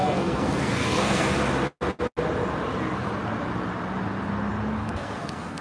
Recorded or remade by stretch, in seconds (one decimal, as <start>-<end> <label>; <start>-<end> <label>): 0.0-1.4 remade; 1.4-4.8 recorded; 4.8-5.6 remade

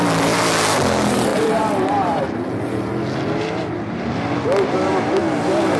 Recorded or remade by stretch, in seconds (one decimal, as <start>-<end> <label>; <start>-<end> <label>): 0.0-1.3 recorded; 1.3-2.2 remade; 2.2-5.8 recorded

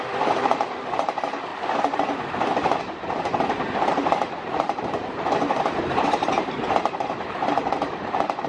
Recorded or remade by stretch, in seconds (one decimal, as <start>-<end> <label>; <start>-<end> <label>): 0.0-1.5 remade; 1.5-2.8 recorded; 2.8-8.5 remade